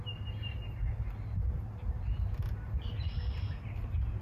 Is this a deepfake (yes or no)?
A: no